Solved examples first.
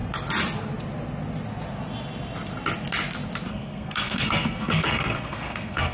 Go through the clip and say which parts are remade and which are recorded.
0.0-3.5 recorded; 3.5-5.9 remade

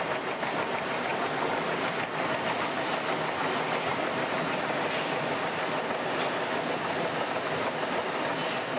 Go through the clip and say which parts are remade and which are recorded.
0.0-1.1 recorded; 1.1-2.1 remade; 2.1-8.8 recorded

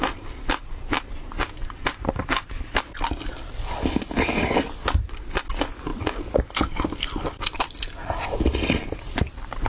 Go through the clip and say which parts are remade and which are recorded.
0.0-9.7 recorded

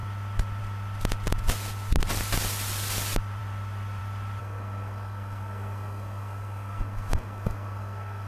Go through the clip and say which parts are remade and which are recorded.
0.0-4.4 recorded; 4.4-8.3 remade